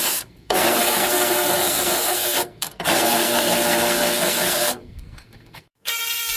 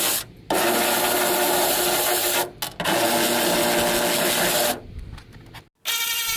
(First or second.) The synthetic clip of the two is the first